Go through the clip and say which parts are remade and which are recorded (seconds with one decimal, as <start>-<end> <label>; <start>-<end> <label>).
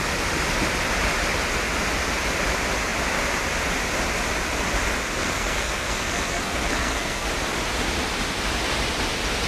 0.0-5.2 recorded; 5.2-7.3 remade; 7.3-9.5 recorded